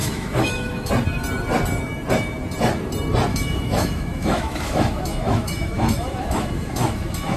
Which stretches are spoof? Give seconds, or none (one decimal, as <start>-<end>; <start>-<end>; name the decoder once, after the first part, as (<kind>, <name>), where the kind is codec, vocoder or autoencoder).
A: 0.0-0.9 (autoencoder, DAC-VAE); 3.3-7.4